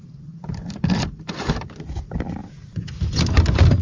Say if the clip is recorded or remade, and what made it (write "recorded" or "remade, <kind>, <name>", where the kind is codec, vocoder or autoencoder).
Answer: recorded